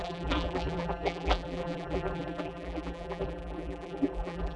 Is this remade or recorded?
remade